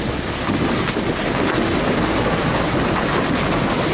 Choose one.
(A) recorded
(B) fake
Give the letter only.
A